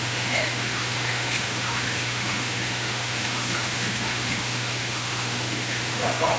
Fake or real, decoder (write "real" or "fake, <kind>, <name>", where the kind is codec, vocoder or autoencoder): fake, autoencoder, DAC-VAE